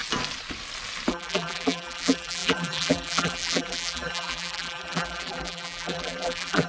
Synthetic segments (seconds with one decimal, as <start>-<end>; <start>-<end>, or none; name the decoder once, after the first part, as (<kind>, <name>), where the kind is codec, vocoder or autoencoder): 1.1-6.7 (vocoder, BigVGAN v2)